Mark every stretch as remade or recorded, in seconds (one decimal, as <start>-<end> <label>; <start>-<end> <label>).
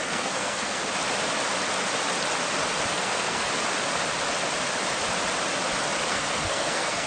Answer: 0.0-0.8 remade; 0.8-2.9 recorded; 2.9-3.5 remade; 3.5-6.1 recorded; 6.1-7.1 remade